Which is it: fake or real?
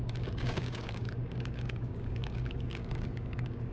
fake